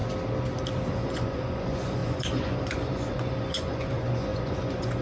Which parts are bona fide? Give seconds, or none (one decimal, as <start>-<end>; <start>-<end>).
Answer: 0.0-0.9